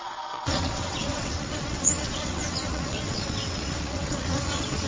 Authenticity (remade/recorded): remade